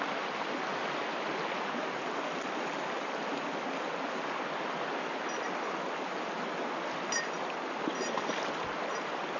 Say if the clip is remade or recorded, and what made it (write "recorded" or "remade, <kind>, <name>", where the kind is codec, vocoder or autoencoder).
recorded